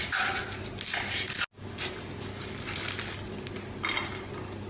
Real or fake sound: real